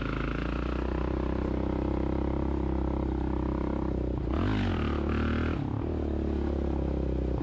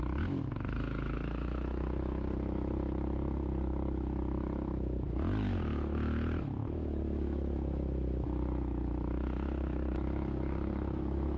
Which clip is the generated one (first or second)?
second